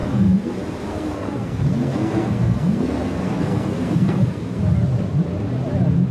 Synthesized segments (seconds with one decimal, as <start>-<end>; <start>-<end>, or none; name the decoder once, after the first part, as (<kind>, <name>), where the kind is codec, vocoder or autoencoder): 0.0-0.5 (codec, SNAC); 0.9-4.6